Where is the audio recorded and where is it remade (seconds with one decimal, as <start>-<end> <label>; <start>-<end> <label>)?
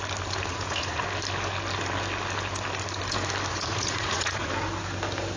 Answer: 0.0-0.5 recorded; 0.5-1.0 remade; 1.0-3.5 recorded; 3.5-4.5 remade; 4.5-5.4 recorded